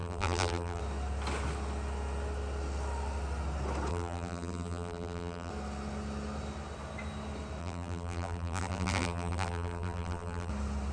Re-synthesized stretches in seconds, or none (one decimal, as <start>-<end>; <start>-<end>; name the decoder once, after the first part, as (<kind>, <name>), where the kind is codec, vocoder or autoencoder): 0.0-0.8 (vocoder, BigVGAN v2); 3.9-5.5; 7.6-10.5